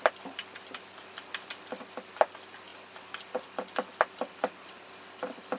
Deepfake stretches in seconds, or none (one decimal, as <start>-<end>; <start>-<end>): none

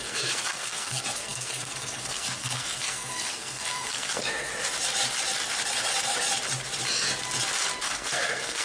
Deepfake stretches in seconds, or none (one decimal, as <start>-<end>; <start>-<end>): 0.0-4.5; 7.8-8.6

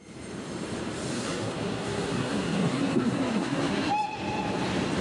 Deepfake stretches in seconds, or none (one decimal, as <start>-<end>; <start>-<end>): 1.1-3.9

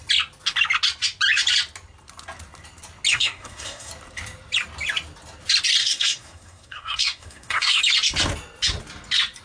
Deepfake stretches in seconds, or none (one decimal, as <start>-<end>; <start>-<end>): 3.1-3.9; 5.8-7.8

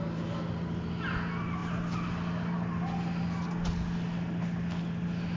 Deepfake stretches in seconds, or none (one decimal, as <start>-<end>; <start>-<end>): none

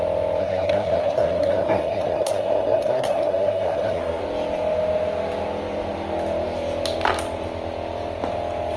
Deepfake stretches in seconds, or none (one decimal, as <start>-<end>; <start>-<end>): 0.4-4.2

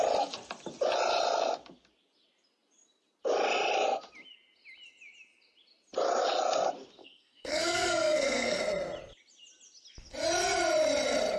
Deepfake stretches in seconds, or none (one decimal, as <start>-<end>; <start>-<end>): 7.0-8.6